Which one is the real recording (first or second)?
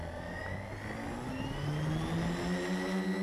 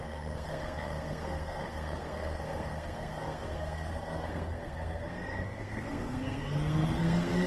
first